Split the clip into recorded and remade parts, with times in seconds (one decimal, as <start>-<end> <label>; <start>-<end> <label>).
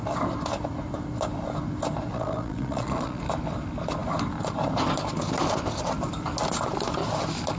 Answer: 0.0-2.1 recorded; 2.1-3.2 remade; 3.2-7.6 recorded